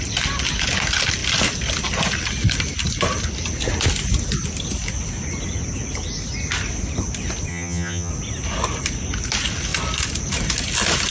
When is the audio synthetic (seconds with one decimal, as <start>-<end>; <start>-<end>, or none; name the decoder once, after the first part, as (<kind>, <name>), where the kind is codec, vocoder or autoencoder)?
7.5-8.1 (vocoder, HiFi-GAN)